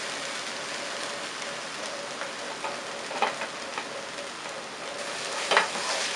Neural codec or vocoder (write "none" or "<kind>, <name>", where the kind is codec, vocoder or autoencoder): none